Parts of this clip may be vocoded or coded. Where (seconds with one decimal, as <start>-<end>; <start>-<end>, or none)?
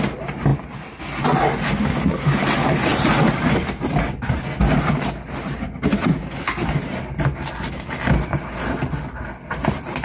0.5-1.0; 2.9-4.2